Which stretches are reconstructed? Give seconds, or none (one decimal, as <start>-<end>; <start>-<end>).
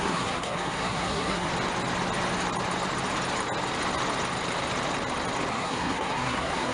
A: 0.0-1.5; 5.5-6.7